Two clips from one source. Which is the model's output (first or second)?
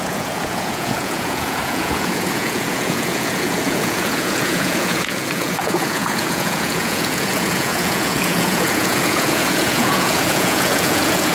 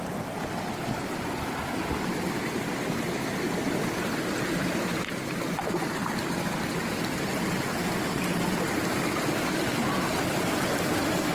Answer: first